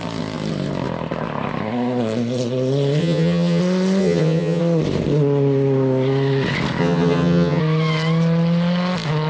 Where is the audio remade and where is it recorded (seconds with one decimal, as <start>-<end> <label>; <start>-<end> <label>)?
0.0-3.0 recorded; 3.0-3.6 remade; 3.6-4.0 recorded; 4.0-4.6 remade; 4.6-6.8 recorded; 6.8-7.6 remade; 7.6-9.3 recorded